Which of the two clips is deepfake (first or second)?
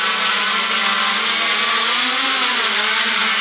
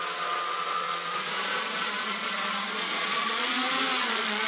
second